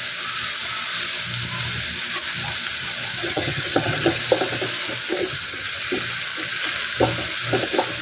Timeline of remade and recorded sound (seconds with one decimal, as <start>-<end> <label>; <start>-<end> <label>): 0.0-3.1 recorded; 3.1-4.2 remade; 4.2-5.2 recorded; 5.2-5.8 remade; 5.8-8.0 recorded